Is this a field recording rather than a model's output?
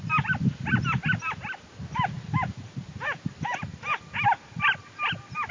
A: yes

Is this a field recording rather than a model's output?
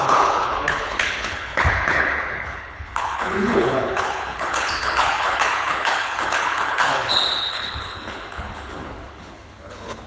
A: no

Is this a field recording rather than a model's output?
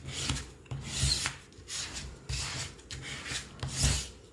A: yes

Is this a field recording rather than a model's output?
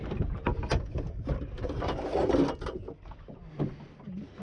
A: yes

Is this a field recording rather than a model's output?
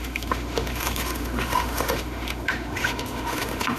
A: no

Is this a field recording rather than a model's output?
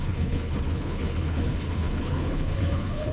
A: no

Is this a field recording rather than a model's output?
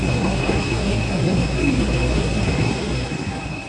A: no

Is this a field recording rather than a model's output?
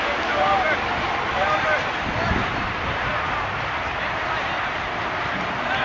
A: no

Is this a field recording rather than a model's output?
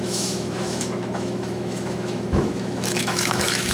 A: no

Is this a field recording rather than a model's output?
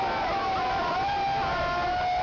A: yes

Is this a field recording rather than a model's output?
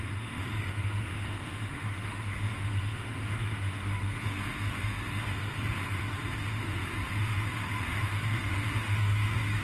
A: no